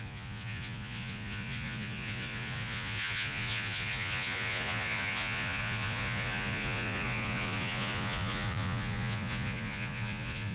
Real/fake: fake